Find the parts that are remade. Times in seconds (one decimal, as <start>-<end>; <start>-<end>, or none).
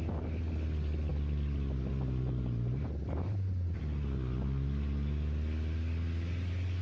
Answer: none